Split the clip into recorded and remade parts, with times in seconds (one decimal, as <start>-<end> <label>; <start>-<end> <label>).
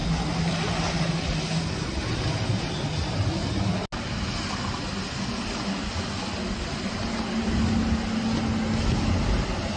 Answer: 0.0-9.8 recorded